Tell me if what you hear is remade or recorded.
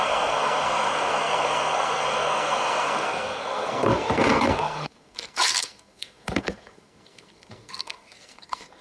remade